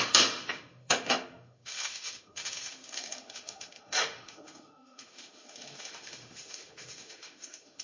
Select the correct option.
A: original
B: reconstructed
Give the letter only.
B